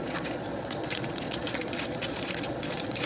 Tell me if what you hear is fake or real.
fake